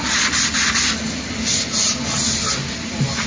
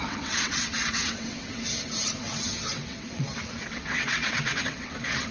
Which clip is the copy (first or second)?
second